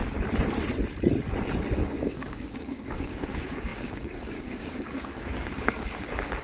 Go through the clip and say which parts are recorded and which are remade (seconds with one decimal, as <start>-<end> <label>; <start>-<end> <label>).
0.0-1.8 recorded; 1.8-6.4 remade